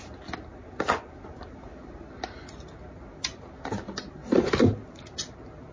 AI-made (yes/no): no